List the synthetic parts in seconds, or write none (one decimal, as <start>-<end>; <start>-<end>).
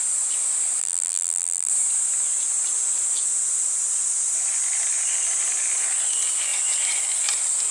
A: 0.8-1.7